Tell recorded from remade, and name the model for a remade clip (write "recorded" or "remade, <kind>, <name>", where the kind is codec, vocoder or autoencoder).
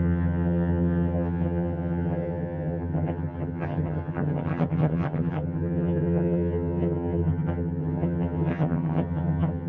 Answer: remade, vocoder, HiFi-GAN